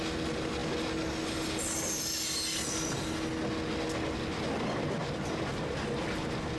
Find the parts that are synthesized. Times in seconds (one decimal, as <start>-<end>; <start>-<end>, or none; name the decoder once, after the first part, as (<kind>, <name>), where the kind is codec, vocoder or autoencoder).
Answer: none